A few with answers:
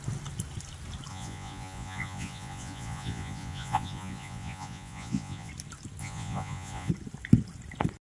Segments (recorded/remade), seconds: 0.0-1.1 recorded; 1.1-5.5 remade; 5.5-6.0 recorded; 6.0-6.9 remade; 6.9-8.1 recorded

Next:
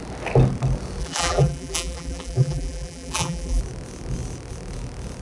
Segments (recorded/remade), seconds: 0.0-1.0 recorded; 1.0-3.6 remade; 3.6-5.2 recorded

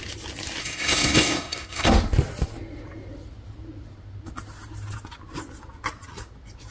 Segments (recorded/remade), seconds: 0.0-0.6 recorded; 0.6-1.9 remade; 1.9-6.7 recorded

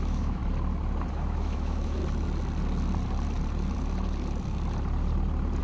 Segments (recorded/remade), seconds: 0.0-0.4 remade; 0.4-1.1 recorded; 1.1-2.0 remade; 2.0-5.6 recorded

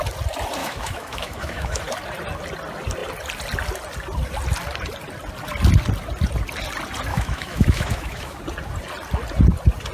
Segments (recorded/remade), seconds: 0.0-0.6 recorded; 0.6-1.8 remade; 1.8-7.1 recorded; 7.1-8.4 remade; 8.4-9.9 recorded

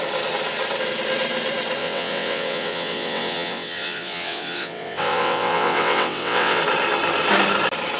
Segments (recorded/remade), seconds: 0.0-1.8 recorded; 1.8-6.6 remade; 6.6-8.0 recorded